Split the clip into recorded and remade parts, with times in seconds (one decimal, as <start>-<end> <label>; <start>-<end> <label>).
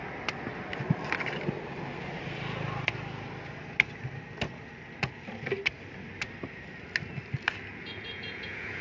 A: 0.0-7.7 recorded; 7.7-8.8 remade